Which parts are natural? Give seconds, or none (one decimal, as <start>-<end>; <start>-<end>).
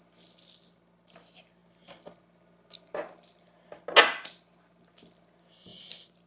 0.0-6.3